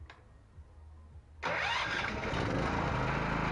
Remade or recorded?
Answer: recorded